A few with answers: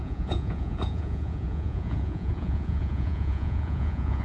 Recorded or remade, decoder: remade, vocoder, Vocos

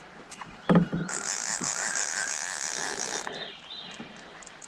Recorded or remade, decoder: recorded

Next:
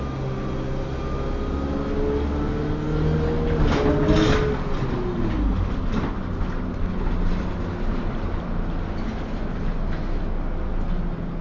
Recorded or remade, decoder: recorded